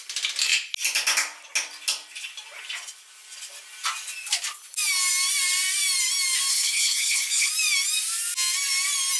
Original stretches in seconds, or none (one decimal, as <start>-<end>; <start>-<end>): 0.0-6.5; 7.5-9.2